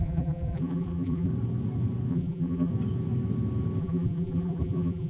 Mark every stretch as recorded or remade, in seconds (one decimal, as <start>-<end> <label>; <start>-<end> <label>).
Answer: 0.0-1.3 remade; 1.3-2.1 recorded; 2.1-2.7 remade; 2.7-3.8 recorded; 3.8-5.1 remade